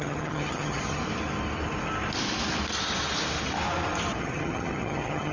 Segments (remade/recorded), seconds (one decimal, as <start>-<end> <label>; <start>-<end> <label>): 0.0-1.0 remade; 1.0-4.2 recorded; 4.2-5.3 remade